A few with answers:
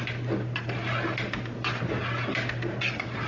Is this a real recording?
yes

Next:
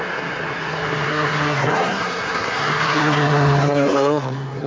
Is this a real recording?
no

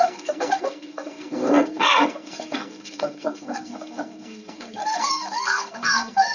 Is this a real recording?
no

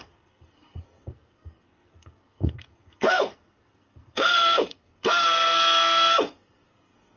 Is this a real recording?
no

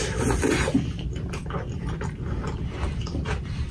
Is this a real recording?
yes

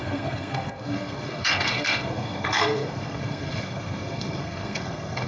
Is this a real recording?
no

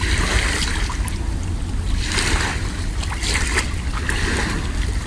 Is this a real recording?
yes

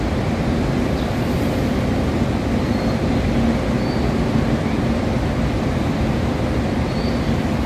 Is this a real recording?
yes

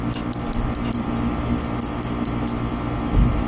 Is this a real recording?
yes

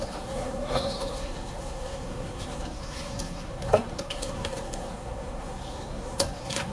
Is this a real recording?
no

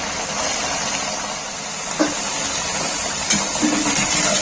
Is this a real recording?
yes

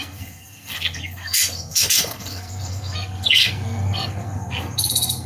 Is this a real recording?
no